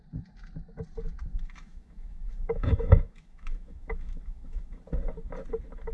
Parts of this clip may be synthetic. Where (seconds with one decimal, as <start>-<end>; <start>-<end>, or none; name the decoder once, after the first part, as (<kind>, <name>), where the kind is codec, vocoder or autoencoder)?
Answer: 1.3-4.8 (autoencoder, DAC-VAE)